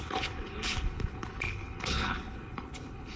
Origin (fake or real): fake